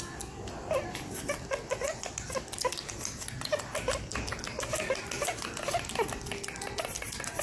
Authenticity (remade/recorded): recorded